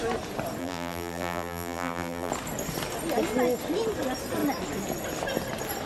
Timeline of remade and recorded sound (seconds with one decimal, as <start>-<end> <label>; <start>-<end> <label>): 0.0-0.6 recorded; 0.6-2.3 remade; 2.3-5.9 recorded